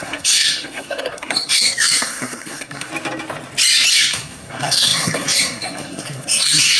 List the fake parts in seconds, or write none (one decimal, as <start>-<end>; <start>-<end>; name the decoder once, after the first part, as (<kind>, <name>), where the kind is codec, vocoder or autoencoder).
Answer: 0.0-2.9 (codec, SNAC); 3.9-6.8